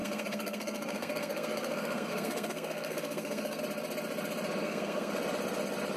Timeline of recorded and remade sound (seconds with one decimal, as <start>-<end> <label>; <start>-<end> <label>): 0.0-3.6 remade; 3.6-4.6 recorded; 4.6-5.1 remade; 5.1-6.0 recorded